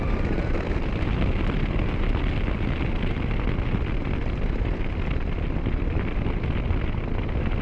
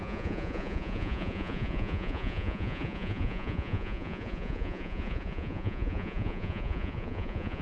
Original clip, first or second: first